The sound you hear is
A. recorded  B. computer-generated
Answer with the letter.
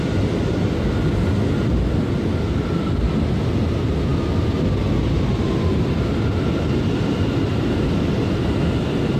A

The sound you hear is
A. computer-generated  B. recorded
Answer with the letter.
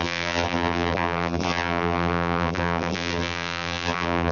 A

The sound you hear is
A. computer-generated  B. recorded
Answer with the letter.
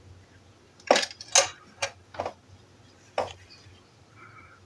B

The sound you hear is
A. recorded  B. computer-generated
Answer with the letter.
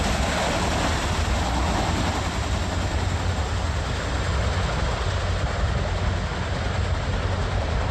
A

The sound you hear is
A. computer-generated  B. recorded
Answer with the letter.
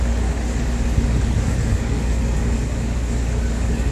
A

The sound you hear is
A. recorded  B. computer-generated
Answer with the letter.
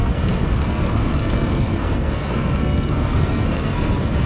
B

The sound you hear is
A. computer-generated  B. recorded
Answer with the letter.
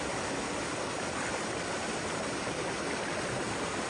B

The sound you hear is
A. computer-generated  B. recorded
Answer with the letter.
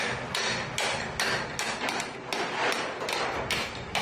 B